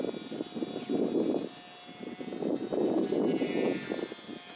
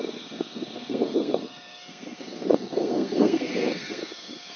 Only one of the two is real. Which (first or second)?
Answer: first